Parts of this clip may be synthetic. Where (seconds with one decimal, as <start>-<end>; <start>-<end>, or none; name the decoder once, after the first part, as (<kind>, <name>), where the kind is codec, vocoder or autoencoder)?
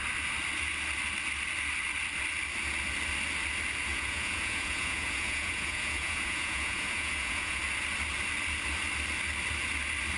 3.9-7.6 (vocoder, Vocos)